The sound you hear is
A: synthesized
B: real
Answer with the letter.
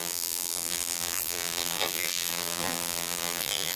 A